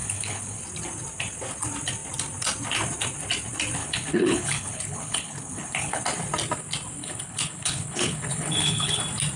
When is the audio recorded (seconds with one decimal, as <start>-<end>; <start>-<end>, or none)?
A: 0.6-3.8; 6.0-7.0; 9.0-9.4